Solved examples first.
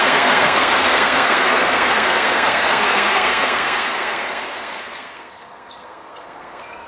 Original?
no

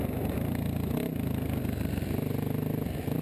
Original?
yes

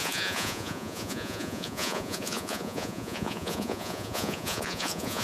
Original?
no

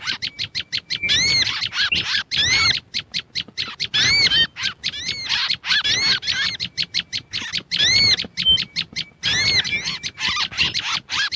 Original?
yes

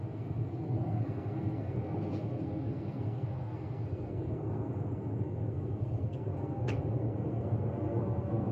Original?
no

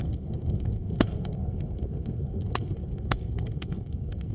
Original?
no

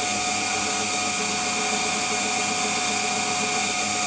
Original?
yes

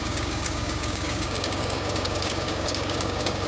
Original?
no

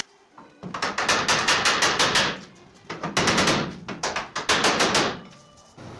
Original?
yes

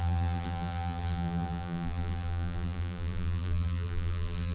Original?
no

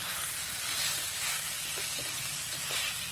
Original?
yes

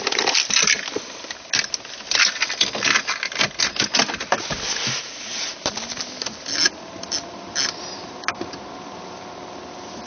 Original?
yes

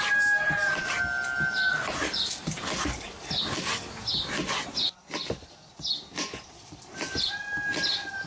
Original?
yes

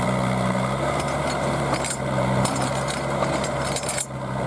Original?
no